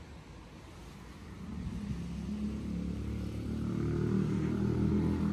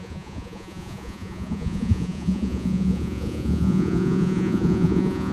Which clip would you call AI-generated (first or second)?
second